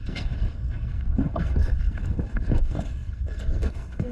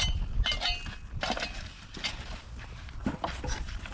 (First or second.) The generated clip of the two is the first